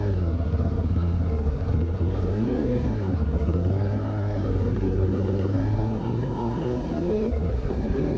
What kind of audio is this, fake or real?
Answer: fake